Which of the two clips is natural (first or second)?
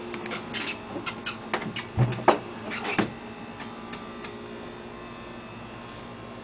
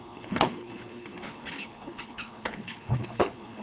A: first